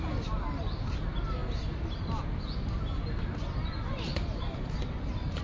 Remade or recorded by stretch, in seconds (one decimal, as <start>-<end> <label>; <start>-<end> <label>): 0.0-5.4 recorded